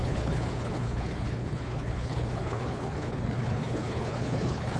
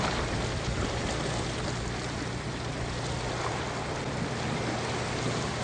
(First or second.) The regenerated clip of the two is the first